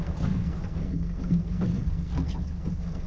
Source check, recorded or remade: remade